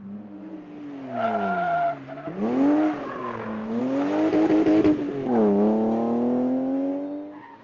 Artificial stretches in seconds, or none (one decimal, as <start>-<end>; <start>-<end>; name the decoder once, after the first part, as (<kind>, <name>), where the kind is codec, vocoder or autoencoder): 3.2-3.8 (codec, DAC)